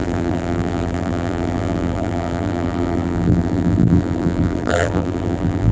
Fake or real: fake